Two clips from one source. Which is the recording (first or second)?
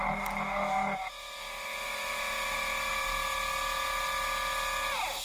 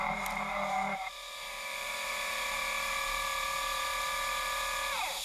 first